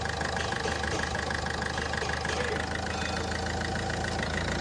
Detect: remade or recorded recorded